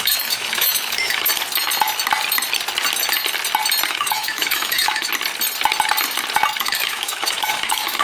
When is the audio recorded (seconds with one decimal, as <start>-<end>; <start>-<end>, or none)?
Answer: 1.3-3.9; 5.1-6.6